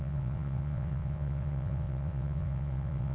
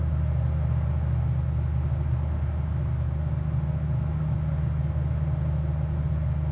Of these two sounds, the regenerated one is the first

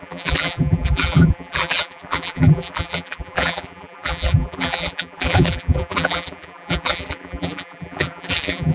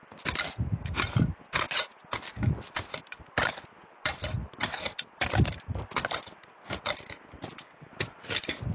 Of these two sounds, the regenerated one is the first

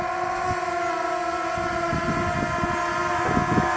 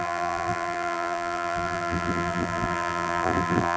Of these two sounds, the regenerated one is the second